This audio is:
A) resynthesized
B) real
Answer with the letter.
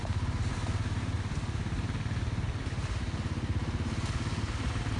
B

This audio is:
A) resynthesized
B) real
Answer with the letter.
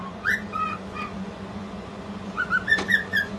A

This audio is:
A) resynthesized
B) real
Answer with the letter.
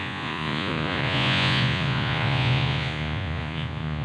A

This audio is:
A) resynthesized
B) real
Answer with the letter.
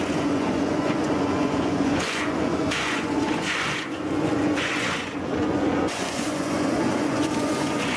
A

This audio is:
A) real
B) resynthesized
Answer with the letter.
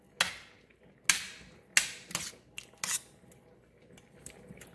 A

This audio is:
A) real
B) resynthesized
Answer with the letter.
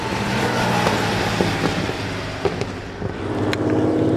A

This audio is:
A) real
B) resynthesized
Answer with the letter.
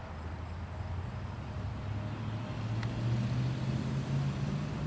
A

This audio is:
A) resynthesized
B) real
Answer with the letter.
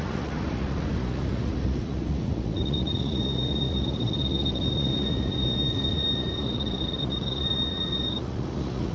A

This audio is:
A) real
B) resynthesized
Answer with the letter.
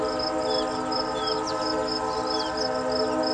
A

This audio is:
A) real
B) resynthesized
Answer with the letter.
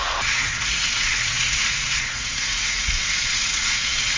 B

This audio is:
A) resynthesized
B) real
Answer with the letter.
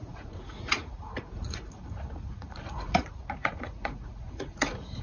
A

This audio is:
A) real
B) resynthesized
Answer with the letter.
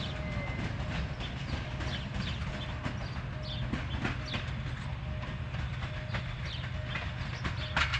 A